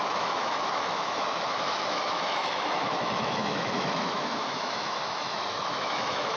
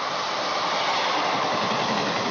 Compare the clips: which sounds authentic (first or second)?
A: second